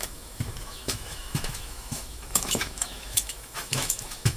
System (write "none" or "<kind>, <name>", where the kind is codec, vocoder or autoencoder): autoencoder, DAC-VAE